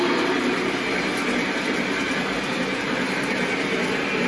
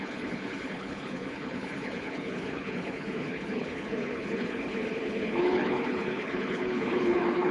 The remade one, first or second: second